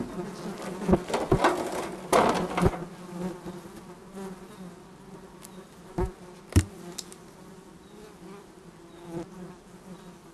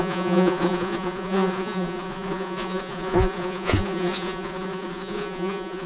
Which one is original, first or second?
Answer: first